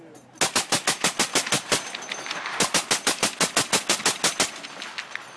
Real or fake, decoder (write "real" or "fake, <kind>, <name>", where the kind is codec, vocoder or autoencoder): real